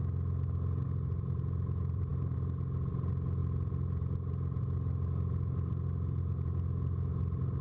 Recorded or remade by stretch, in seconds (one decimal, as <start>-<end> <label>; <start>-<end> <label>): 0.0-7.6 recorded